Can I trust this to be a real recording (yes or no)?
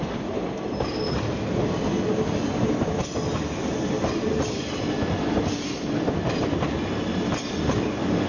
yes